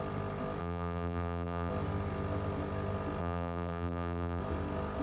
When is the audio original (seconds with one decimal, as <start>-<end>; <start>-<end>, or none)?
0.0-0.6; 1.7-3.2; 4.4-5.0